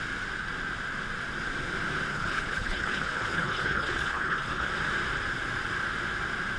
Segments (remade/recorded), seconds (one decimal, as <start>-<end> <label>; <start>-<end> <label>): 0.0-2.1 recorded; 2.1-4.7 remade; 4.7-6.6 recorded